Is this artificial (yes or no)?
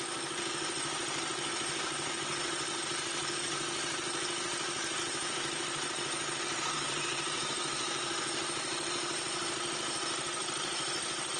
no